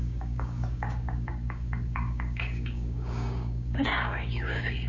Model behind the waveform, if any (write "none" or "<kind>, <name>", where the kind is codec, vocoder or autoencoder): codec, DAC